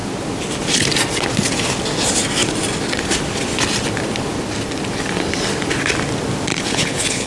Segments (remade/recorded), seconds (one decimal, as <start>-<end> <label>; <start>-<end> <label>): 0.0-6.5 recorded; 6.5-7.3 remade